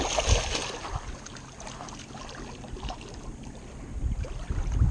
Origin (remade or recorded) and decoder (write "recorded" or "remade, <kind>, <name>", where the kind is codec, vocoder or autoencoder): recorded